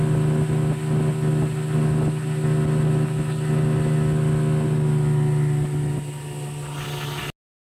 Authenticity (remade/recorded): recorded